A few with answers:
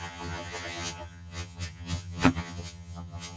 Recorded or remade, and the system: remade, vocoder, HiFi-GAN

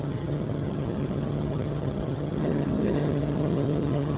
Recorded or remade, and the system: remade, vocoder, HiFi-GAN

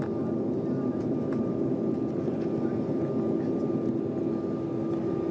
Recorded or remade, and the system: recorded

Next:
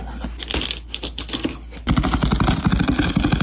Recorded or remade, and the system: recorded